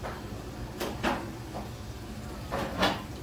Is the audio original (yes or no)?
yes